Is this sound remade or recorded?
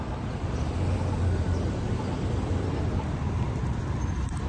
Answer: recorded